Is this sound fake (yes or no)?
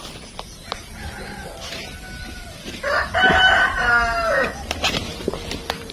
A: no